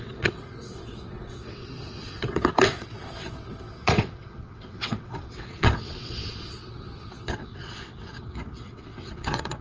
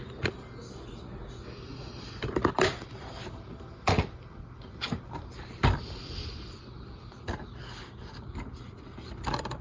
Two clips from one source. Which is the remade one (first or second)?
first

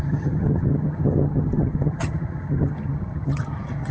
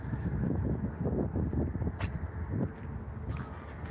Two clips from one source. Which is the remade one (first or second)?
first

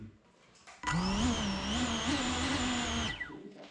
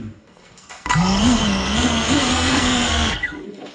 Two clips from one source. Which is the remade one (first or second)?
second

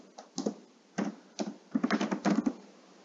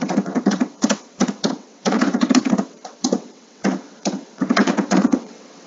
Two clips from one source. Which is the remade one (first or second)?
second